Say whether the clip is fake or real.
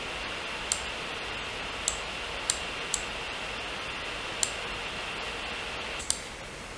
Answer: real